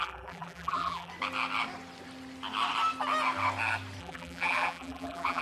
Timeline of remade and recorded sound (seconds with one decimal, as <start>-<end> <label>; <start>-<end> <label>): 0.0-1.1 remade; 1.1-4.0 recorded; 4.0-5.4 remade